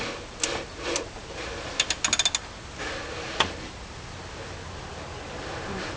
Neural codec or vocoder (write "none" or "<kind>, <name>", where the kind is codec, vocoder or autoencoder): none